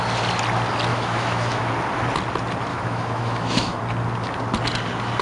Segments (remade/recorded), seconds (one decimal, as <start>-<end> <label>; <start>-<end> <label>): 0.0-0.9 recorded; 0.9-1.7 remade; 1.7-2.7 recorded; 2.7-3.8 remade; 3.8-5.2 recorded